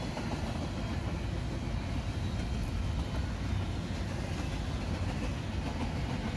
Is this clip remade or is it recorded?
recorded